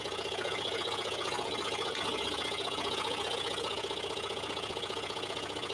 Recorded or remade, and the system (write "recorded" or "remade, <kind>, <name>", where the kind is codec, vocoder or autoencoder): remade, vocoder, Vocos